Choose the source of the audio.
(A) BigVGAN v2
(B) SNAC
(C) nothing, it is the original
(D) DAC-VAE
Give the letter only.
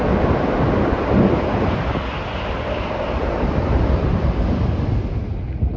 C